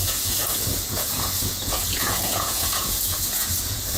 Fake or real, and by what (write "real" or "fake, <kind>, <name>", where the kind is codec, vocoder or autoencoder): fake, vocoder, Vocos